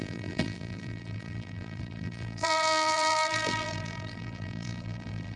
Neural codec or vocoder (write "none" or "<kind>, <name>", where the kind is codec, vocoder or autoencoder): vocoder, BigVGAN v2